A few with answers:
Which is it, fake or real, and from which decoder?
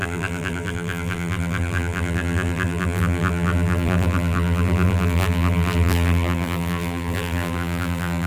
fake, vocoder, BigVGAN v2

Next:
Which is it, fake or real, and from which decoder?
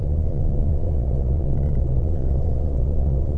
fake, vocoder, Vocos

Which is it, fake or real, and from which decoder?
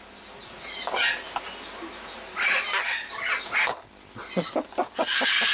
real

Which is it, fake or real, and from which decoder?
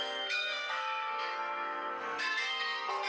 fake, codec, SNAC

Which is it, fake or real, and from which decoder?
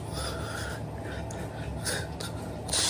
real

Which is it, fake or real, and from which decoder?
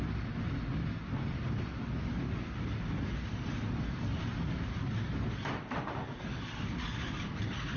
real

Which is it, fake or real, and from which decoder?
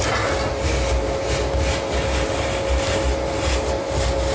real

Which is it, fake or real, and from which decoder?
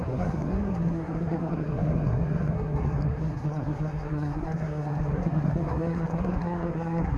fake, codec, SNAC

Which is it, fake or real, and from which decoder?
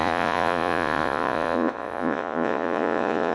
fake, vocoder, Vocos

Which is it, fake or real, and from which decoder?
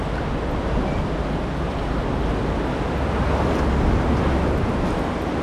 real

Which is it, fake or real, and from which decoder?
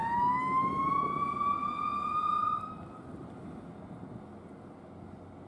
real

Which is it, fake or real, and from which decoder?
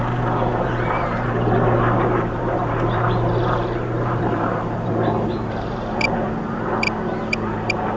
fake, vocoder, BigVGAN v2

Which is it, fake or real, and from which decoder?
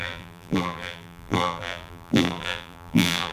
fake, vocoder, BigVGAN v2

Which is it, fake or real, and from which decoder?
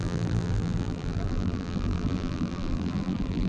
fake, vocoder, BigVGAN v2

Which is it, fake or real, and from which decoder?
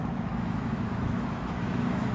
fake, autoencoder, DAC-VAE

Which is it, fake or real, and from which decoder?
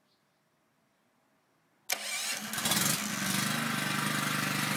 real